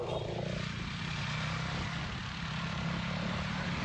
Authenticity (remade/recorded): recorded